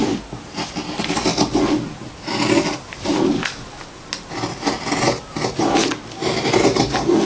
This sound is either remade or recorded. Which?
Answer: recorded